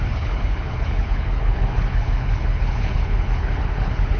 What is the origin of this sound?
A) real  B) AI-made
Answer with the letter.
B